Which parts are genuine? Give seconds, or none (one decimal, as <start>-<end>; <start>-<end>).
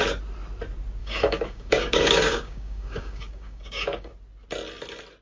0.0-1.0; 4.1-5.2